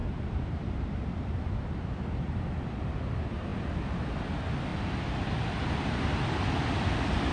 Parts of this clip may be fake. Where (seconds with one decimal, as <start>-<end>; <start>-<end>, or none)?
0.0-0.7

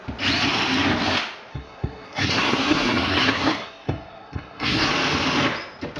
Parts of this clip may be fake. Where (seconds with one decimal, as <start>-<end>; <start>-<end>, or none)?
1.5-4.9

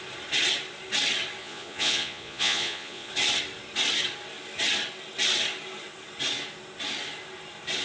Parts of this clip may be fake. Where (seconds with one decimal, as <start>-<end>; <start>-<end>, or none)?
1.4-3.1

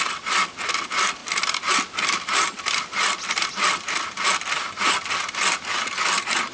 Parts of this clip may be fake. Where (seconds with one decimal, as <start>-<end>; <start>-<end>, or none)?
none

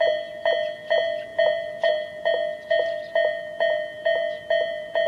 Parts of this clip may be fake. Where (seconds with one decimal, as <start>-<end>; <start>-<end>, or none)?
none

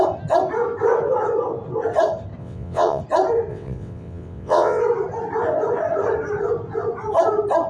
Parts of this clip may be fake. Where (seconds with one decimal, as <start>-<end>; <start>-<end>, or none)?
2.4-3.0; 3.5-4.8

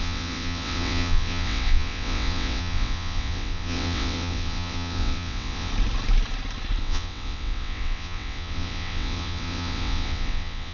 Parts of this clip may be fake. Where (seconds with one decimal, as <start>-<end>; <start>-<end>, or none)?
0.0-5.7; 6.8-10.7

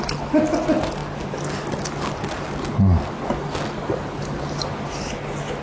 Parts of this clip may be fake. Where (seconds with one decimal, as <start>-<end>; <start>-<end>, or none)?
none